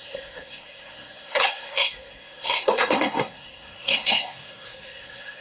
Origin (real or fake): fake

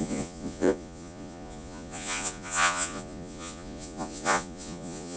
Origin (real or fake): fake